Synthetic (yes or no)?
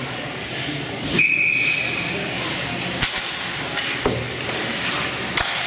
no